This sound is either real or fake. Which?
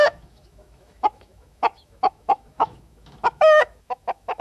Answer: fake